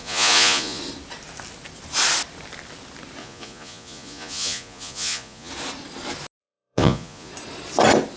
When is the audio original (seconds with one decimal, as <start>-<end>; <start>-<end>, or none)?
0.8-3.2; 5.5-6.4; 7.3-8.2